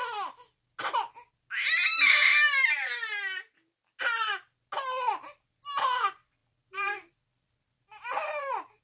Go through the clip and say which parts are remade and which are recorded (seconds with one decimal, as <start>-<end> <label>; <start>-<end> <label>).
0.0-6.4 recorded; 6.4-8.8 remade